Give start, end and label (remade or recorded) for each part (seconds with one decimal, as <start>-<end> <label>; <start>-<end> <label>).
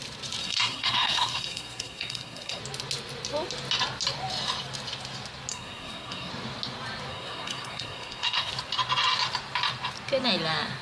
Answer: 0.0-0.4 recorded; 0.4-2.6 remade; 2.6-5.5 recorded; 5.5-6.3 remade; 6.3-7.1 recorded; 7.1-8.5 remade; 8.5-10.8 recorded